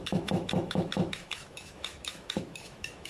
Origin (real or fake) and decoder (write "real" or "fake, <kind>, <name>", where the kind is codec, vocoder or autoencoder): fake, autoencoder, DAC-VAE